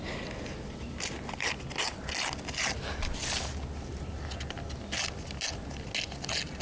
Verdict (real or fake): real